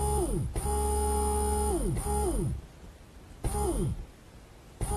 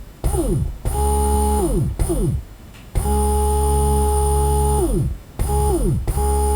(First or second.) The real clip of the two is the first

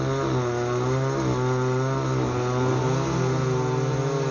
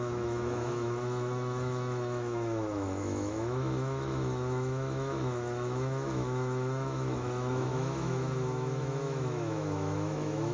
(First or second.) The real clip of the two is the first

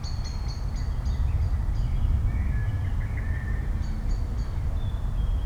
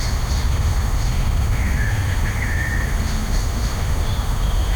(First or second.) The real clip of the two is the first